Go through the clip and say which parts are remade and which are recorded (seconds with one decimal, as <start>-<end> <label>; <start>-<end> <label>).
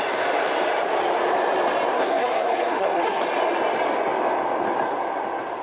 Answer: 0.0-1.9 recorded; 1.9-3.2 remade; 3.2-5.6 recorded